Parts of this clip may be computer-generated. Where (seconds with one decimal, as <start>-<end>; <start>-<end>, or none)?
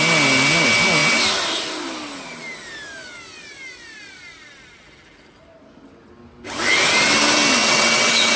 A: 7.6-8.4